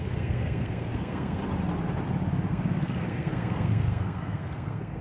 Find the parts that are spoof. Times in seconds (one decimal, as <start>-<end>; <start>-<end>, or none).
0.0-1.4; 2.5-5.0